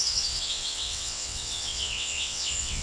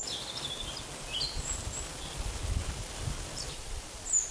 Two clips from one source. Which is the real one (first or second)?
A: second